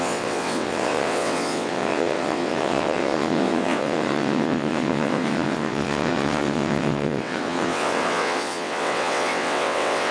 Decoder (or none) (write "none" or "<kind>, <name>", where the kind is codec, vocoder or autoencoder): vocoder, WaveNeXt